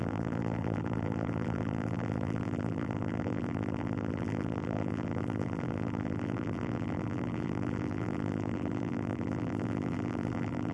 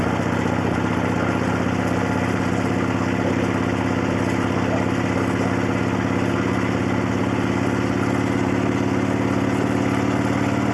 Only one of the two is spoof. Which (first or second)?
first